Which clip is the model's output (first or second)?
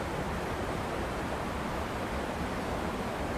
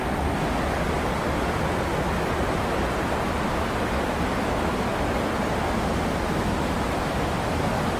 first